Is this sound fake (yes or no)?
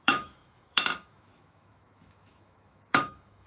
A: yes